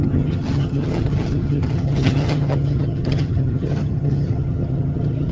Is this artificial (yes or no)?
yes